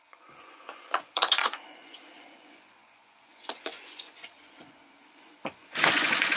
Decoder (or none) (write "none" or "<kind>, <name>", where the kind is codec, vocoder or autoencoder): vocoder, Vocos